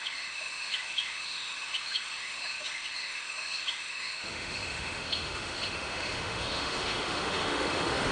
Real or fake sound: fake